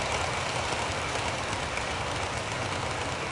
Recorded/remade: recorded